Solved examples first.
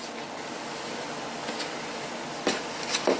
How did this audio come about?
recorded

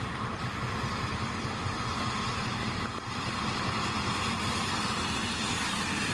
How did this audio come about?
recorded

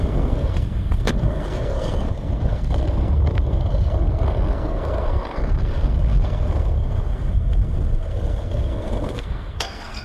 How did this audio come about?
remade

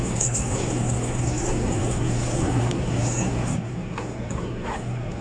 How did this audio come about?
remade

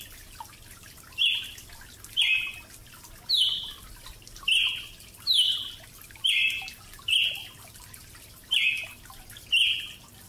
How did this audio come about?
recorded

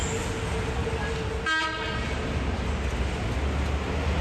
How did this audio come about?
recorded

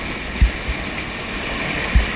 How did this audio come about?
recorded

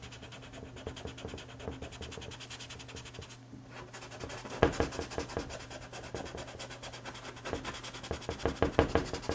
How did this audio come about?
recorded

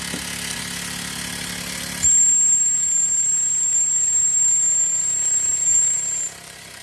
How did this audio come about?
recorded